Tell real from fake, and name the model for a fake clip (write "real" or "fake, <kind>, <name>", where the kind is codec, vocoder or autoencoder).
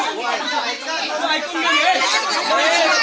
real